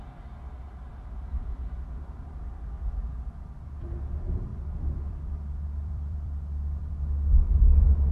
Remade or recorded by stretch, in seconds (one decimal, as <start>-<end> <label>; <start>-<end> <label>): 0.0-4.5 recorded; 4.5-6.9 remade; 6.9-8.1 recorded